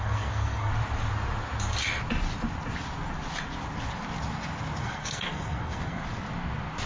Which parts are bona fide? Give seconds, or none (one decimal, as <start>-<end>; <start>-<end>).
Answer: 0.7-4.8; 6.0-6.9